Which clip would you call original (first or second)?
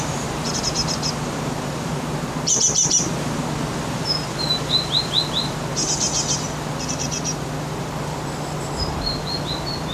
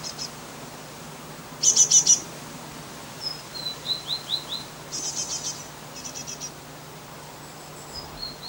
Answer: second